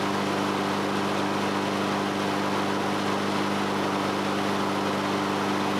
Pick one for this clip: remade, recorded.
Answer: recorded